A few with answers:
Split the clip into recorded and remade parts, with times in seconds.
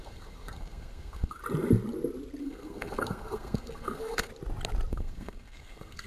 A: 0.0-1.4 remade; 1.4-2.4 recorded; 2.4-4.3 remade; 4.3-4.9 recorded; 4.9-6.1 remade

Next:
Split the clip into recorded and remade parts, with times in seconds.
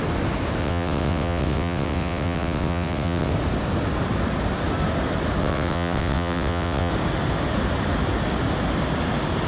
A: 0.0-0.6 recorded; 0.6-3.3 remade; 3.3-5.4 recorded; 5.4-6.9 remade; 6.9-9.5 recorded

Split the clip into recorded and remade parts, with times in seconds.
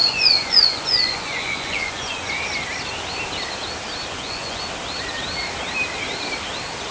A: 0.0-2.3 remade; 2.3-4.1 recorded; 4.1-4.6 remade; 4.6-6.9 recorded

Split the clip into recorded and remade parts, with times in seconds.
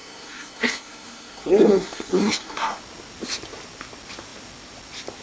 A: 0.0-2.8 remade; 2.8-5.2 recorded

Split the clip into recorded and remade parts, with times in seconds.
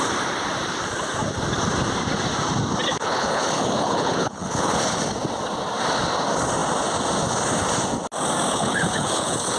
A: 0.0-2.9 recorded; 2.9-5.0 remade; 5.0-8.5 recorded; 8.5-9.6 remade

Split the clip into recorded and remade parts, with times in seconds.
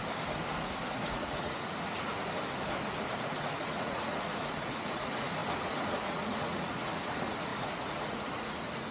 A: 0.0-0.9 recorded; 0.9-2.1 remade; 2.1-3.3 recorded; 3.3-8.9 remade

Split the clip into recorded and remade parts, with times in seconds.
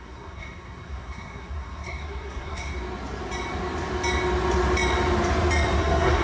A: 0.0-2.7 remade; 2.7-5.8 recorded; 5.8-6.2 remade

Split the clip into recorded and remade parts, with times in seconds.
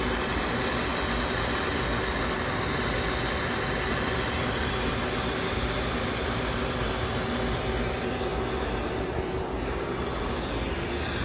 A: 0.0-11.2 recorded